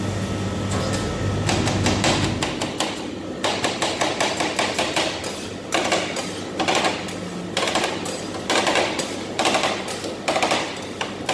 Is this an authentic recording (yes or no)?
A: yes